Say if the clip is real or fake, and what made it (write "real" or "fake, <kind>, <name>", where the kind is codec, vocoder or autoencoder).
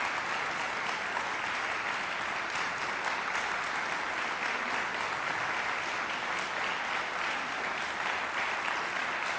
real